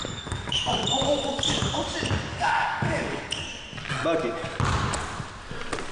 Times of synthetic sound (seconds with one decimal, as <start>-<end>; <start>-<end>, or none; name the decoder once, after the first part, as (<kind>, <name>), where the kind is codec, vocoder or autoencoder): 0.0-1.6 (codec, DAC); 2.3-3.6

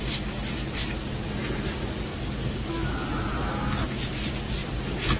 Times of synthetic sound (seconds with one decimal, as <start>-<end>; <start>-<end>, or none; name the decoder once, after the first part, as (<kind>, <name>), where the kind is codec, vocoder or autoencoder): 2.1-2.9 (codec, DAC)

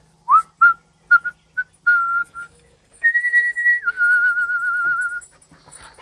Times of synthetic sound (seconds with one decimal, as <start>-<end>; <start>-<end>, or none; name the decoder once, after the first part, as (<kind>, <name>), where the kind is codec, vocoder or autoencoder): 2.2-3.8 (codec, DAC)